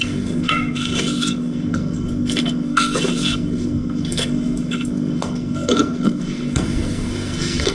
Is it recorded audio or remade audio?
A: remade